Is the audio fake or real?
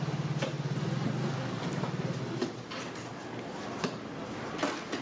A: real